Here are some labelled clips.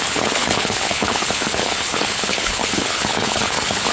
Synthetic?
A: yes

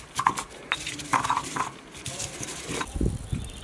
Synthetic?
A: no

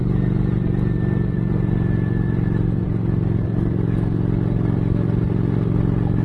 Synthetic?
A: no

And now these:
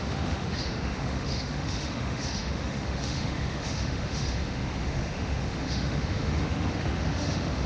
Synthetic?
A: yes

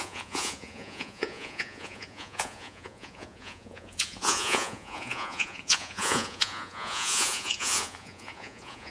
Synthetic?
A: yes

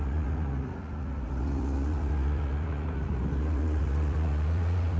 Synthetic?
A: yes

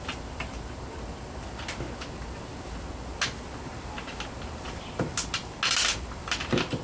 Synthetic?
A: no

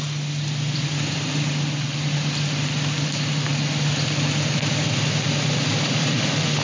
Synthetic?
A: no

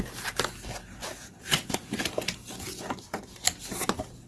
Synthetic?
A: no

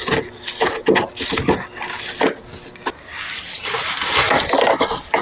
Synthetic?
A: no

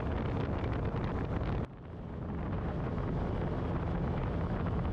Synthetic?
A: no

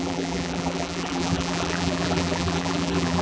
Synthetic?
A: yes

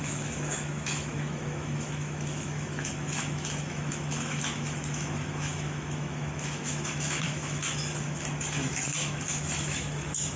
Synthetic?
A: yes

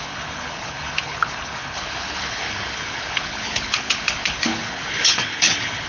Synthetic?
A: yes